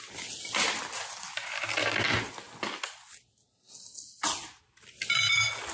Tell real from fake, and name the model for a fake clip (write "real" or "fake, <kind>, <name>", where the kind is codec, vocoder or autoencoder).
real